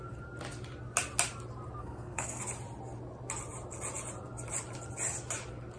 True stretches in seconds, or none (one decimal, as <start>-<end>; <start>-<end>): 0.0-1.8; 2.4-5.8